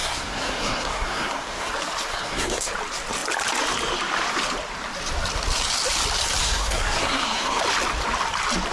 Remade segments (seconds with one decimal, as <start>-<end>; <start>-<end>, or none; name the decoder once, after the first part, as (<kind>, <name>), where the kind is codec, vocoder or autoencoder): 0.0-1.7 (codec, SNAC); 2.1-2.7; 6.4-7.6